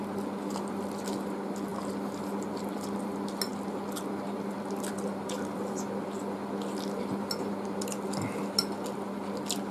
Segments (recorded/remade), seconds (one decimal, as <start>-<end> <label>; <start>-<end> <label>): 0.0-9.7 recorded